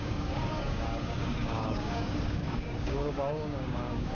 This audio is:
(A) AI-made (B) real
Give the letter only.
A